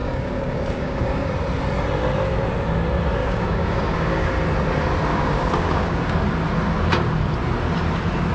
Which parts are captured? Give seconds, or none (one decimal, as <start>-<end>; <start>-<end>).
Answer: 1.3-3.2; 4.3-5.1; 6.2-8.3